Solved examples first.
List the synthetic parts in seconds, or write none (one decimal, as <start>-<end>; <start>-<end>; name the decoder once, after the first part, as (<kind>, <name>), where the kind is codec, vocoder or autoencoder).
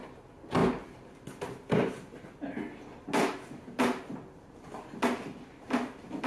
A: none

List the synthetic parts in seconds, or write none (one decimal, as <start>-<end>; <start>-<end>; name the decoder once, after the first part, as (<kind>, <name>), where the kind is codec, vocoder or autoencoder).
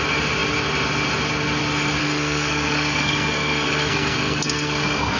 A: 2.0-5.2 (codec, SNAC)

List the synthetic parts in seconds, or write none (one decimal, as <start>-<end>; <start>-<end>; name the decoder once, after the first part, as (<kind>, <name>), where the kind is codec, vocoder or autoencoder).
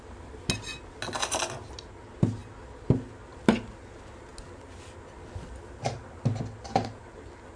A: none